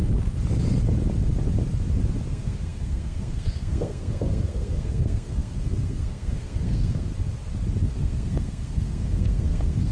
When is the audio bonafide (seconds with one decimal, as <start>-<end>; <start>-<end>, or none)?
0.0-2.3; 7.1-7.9